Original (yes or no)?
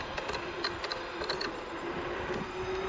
yes